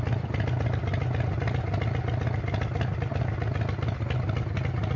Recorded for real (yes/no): yes